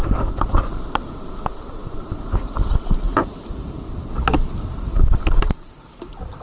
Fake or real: real